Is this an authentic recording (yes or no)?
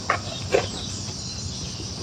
yes